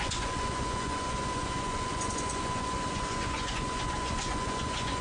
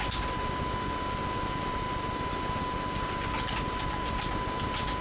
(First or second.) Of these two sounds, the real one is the second